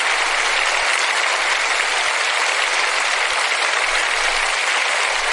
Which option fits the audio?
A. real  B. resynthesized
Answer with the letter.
A